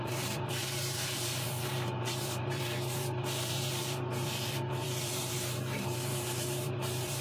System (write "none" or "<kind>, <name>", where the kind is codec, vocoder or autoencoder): vocoder, BigVGAN v2